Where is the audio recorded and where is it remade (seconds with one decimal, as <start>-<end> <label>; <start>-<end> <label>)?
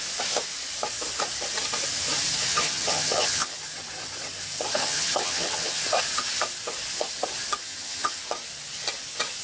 0.0-2.5 recorded; 2.5-3.6 remade; 3.6-4.8 recorded; 4.8-5.8 remade; 5.8-7.6 recorded; 7.6-8.2 remade; 8.2-9.4 recorded